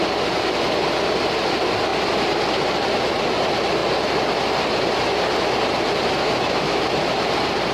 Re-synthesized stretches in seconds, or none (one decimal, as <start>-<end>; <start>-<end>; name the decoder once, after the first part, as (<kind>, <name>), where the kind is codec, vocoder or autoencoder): 6.2-6.8 (autoencoder, DAC-VAE)

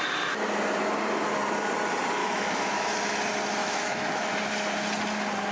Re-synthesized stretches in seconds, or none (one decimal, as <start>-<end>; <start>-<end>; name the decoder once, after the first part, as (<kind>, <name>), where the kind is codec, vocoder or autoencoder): 2.2-2.9 (autoencoder, DAC-VAE); 3.6-4.3

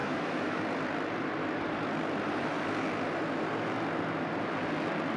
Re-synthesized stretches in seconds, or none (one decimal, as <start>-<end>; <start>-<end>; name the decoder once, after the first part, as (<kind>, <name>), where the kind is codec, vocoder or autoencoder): 0.0-0.6 (autoencoder, DAC-VAE)

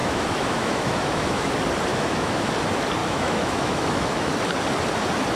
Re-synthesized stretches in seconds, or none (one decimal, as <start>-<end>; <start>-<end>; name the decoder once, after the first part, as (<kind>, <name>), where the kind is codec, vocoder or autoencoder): 0.0-1.5 (autoencoder, DAC-VAE); 1.9-2.5; 3.0-4.3

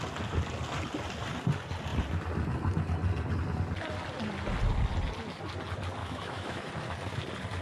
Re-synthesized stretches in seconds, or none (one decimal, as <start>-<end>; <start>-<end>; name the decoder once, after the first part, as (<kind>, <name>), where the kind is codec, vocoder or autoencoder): 6.0-6.7 (autoencoder, DAC-VAE)